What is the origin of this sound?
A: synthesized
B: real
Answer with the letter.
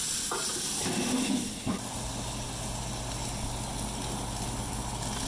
B